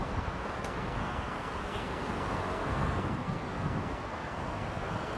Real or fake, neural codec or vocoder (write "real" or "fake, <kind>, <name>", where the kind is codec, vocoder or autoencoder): fake, codec, SNAC